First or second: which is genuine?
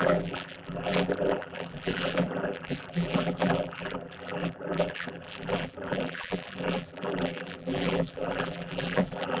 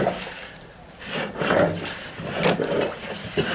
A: second